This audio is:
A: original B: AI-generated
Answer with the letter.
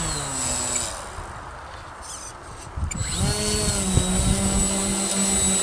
A